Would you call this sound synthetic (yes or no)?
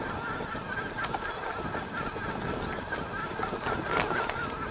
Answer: no